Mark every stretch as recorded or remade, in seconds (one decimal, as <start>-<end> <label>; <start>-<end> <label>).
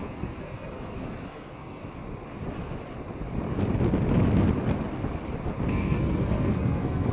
0.0-1.8 remade; 1.8-5.7 recorded; 5.7-7.1 remade